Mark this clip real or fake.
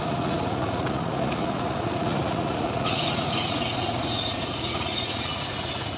fake